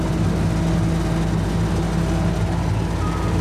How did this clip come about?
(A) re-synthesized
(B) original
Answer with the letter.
B